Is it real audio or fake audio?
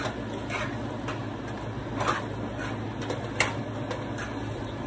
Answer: real